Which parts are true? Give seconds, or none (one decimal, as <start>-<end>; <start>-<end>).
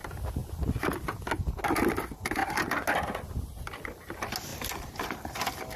0.0-5.8